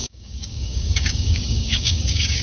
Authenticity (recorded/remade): remade